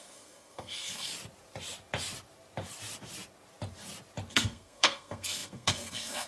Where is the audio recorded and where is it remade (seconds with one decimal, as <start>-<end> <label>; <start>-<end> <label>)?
0.0-1.1 remade; 1.1-4.3 recorded; 4.3-6.3 remade

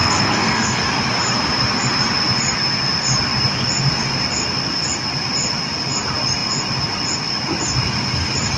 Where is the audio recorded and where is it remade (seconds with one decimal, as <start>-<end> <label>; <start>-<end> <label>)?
0.0-0.8 remade; 0.8-8.6 recorded

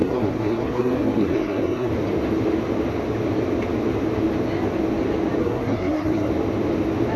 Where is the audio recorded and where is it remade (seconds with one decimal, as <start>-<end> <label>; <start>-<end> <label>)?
0.0-1.9 remade; 1.9-5.4 recorded; 5.4-6.3 remade; 6.3-7.2 recorded

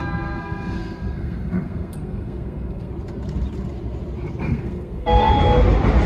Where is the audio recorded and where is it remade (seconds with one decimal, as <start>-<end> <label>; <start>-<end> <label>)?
0.0-2.9 remade; 2.9-4.4 recorded; 4.4-5.3 remade; 5.3-6.1 recorded

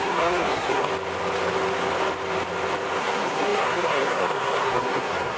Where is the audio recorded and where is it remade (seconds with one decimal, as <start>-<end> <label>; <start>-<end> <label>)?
0.0-0.9 remade; 0.9-3.0 recorded; 3.0-5.4 remade